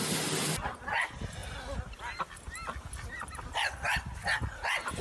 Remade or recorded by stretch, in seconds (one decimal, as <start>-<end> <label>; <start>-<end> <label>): 0.0-5.0 recorded